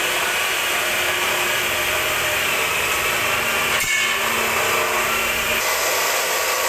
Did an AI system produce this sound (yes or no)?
no